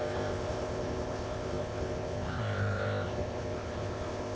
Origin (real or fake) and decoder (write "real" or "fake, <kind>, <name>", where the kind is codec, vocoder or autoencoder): fake, codec, ZipCodec